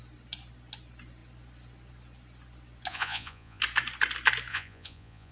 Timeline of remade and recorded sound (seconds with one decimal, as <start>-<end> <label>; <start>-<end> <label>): 0.0-2.9 recorded; 2.9-3.6 remade; 3.6-4.5 recorded; 4.5-5.3 remade